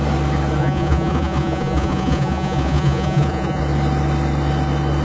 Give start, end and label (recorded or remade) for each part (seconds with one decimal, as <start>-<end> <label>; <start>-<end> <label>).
0.0-0.6 recorded; 0.6-3.6 remade; 3.6-5.0 recorded